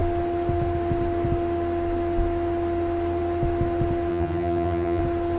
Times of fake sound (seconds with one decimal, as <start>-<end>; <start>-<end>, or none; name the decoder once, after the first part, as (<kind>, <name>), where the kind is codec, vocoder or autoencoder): 4.1-5.0 (vocoder, HiFi-GAN)